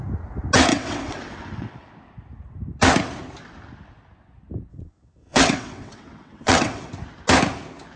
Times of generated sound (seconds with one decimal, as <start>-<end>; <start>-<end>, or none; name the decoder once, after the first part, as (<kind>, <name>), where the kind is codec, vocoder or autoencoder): 0.7-1.9 (vocoder, WaveNeXt); 4.7-6.9